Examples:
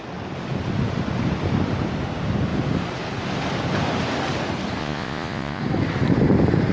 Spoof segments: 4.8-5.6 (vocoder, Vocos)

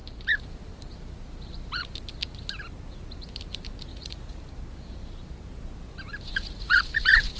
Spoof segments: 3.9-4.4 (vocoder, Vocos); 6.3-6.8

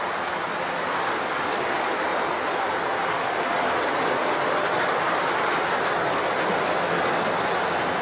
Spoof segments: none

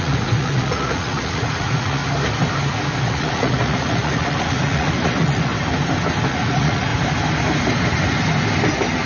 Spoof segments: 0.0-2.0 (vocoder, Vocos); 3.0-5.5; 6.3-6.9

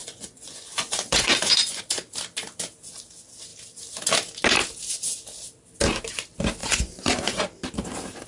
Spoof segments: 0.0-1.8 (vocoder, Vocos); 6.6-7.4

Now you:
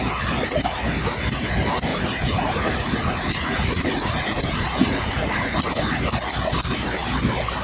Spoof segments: 1.9-5.7 (vocoder, Vocos)

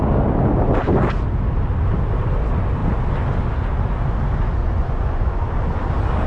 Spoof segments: 4.6-5.4 (vocoder, Vocos)

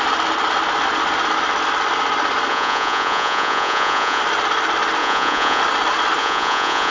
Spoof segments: 2.5-4.2 (vocoder, Vocos); 5.0-5.6; 6.2-6.9